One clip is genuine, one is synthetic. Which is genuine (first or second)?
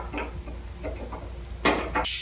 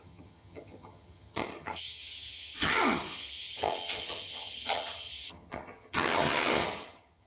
first